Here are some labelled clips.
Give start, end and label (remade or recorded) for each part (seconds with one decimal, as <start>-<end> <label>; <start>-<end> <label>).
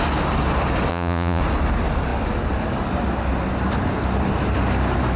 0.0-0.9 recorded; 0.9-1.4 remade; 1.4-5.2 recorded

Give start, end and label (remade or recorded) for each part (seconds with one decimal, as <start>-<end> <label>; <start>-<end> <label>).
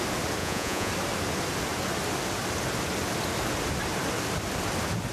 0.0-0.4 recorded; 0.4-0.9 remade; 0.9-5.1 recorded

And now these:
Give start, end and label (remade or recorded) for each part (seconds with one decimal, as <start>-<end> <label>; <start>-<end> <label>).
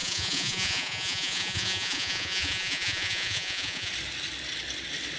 0.0-3.9 remade; 3.9-5.2 recorded